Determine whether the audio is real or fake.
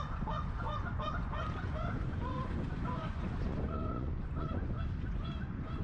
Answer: fake